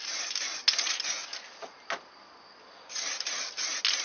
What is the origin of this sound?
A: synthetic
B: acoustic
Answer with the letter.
B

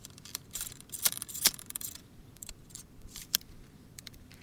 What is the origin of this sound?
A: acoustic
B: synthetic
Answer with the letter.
B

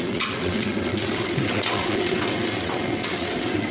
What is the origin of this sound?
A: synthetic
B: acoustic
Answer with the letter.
A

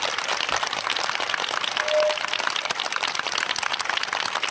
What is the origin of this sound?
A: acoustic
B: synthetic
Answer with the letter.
A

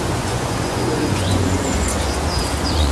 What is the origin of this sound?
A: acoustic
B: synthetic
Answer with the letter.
B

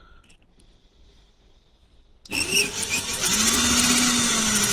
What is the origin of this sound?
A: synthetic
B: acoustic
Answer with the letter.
B